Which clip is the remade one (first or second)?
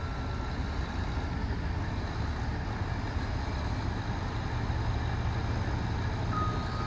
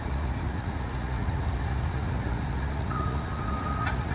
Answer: second